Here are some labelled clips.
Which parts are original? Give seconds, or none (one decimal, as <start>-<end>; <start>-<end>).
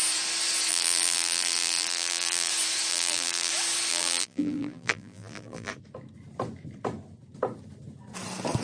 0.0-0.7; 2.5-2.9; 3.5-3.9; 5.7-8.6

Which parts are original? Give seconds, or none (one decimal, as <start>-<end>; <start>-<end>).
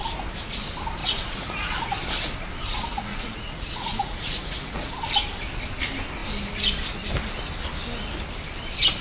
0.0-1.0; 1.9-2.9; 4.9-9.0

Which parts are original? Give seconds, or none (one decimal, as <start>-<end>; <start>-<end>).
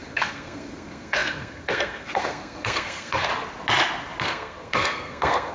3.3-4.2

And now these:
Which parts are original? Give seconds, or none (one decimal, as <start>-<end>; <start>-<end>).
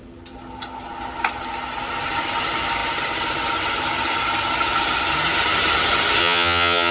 0.0-6.2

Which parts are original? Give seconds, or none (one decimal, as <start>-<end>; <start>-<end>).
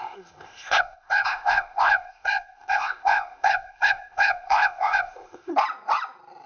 5.5-6.5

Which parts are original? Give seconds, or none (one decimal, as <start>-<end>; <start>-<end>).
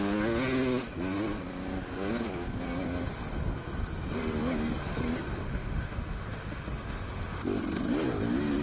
0.0-5.4; 7.4-8.6